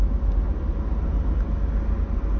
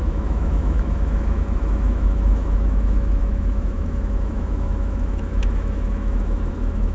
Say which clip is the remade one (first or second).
second